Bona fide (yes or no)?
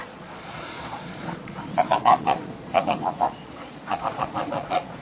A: no